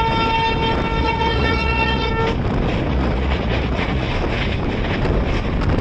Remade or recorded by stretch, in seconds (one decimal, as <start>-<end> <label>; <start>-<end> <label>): 0.0-1.0 recorded; 1.0-2.1 remade; 2.1-2.9 recorded; 2.9-4.1 remade; 4.1-5.8 recorded